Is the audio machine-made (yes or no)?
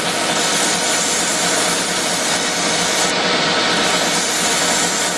no